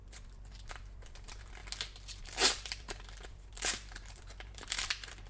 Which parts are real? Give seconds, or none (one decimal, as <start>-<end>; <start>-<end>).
1.6-2.2